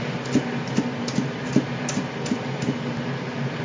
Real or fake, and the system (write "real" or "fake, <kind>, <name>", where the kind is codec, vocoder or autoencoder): real